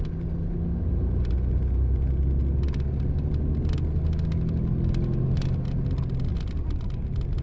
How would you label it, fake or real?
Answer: real